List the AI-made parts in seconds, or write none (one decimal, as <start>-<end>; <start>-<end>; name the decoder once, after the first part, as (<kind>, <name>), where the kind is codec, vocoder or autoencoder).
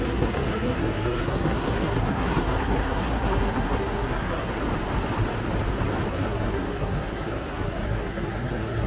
0.0-4.7 (codec, SNAC); 6.1-8.9